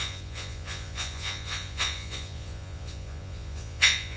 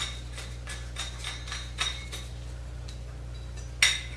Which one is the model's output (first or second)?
first